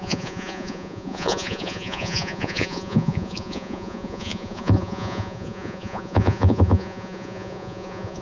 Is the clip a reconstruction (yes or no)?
yes